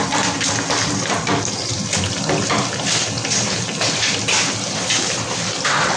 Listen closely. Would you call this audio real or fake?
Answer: real